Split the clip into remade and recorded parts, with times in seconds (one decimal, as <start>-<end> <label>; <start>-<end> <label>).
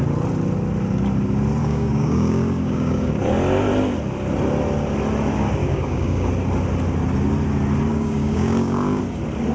0.0-1.6 recorded; 1.6-3.1 remade; 3.1-5.6 recorded; 5.6-6.3 remade; 6.3-7.9 recorded; 7.9-9.0 remade; 9.0-9.5 recorded